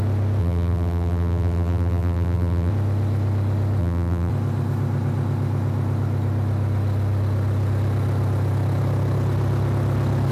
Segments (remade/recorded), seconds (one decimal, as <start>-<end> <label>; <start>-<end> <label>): 0.0-0.4 recorded; 0.4-2.7 remade; 2.7-3.8 recorded; 3.8-4.3 remade; 4.3-10.3 recorded